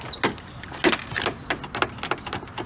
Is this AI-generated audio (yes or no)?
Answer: no